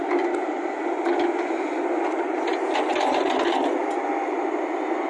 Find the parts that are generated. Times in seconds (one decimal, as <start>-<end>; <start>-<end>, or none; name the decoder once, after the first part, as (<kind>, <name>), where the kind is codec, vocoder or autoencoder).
none